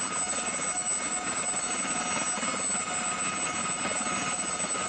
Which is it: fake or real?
real